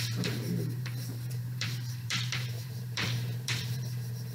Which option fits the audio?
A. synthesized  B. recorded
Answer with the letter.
A